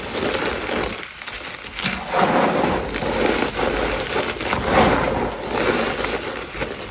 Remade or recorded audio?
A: recorded